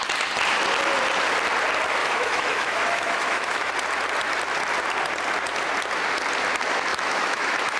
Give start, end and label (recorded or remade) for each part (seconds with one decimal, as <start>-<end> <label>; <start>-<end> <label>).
0.0-2.0 recorded; 2.0-3.7 remade; 3.7-6.9 recorded; 6.9-7.8 remade